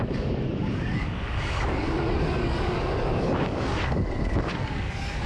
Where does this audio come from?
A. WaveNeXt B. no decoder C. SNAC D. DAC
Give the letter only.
D